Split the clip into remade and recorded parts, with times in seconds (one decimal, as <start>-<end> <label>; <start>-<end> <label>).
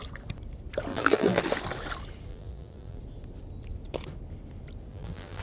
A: 0.0-0.9 recorded; 0.9-1.4 remade; 1.4-2.3 recorded; 2.3-3.0 remade; 3.0-4.9 recorded; 4.9-5.4 remade